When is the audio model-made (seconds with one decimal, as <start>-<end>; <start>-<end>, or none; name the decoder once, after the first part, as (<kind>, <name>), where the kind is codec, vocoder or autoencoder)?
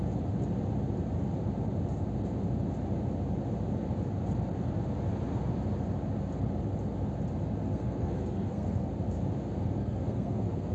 7.6-8.9 (codec, SNAC); 9.8-10.7